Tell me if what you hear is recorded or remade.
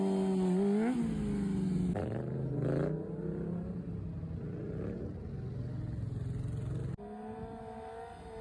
recorded